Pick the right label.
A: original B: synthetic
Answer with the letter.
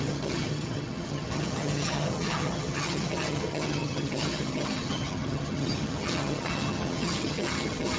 B